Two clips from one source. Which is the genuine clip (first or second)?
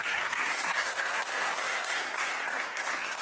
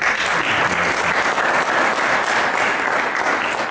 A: second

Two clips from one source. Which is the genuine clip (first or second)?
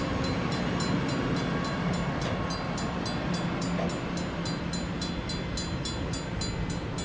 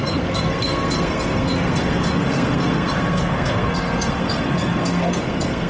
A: first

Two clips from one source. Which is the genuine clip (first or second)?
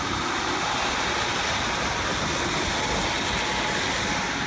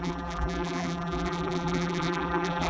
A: first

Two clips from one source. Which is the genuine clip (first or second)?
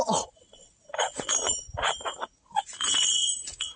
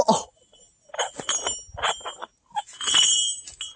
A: second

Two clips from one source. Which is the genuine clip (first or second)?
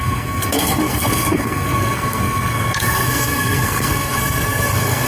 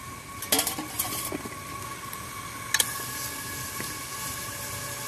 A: second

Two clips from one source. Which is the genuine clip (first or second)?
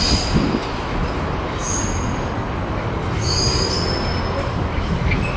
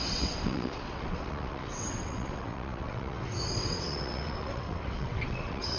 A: first